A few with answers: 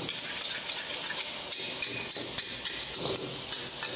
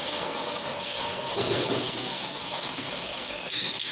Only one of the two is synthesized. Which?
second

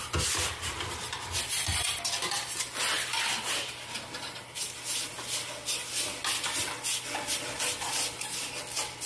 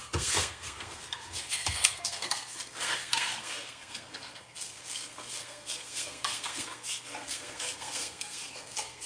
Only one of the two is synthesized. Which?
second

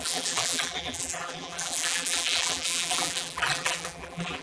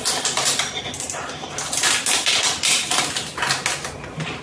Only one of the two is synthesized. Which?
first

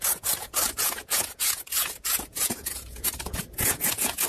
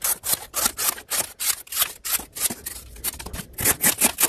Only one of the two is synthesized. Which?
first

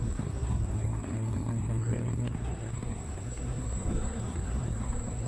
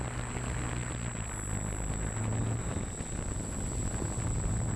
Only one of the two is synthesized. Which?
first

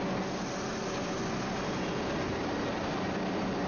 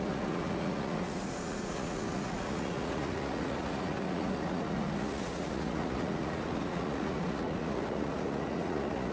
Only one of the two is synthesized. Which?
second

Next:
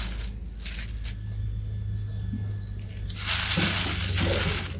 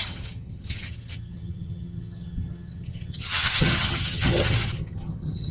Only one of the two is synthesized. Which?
second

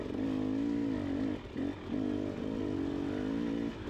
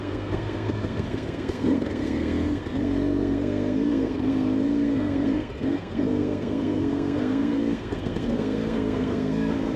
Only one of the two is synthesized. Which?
second